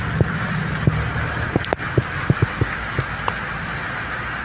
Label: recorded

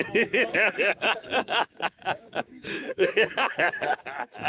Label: remade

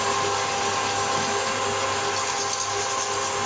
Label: recorded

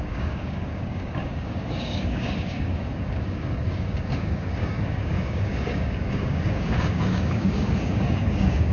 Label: remade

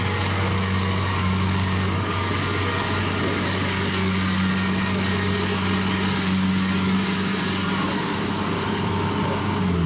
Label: remade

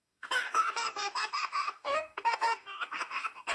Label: remade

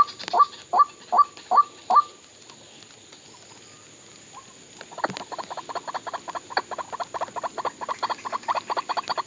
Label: recorded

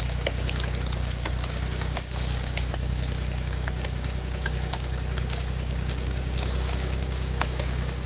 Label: remade